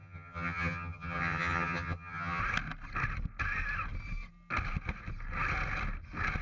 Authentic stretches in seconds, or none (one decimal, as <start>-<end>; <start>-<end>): 2.4-6.4